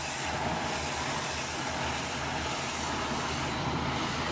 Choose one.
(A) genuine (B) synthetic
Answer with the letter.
A